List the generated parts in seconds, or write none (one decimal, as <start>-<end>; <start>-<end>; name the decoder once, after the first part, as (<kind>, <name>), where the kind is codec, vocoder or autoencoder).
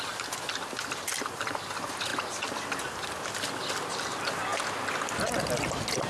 none